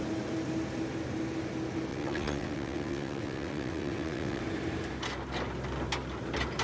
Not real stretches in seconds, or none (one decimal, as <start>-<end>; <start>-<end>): 1.9-4.4